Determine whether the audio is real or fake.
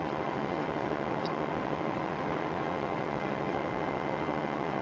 fake